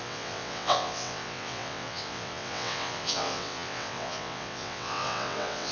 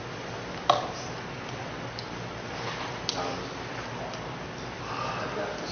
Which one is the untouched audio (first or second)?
second